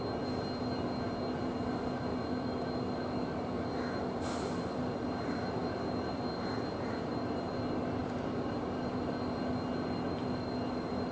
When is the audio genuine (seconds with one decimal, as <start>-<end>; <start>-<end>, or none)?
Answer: 0.0-8.0; 8.5-11.1